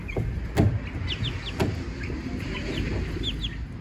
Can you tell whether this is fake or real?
real